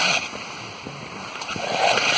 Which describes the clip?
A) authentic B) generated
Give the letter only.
A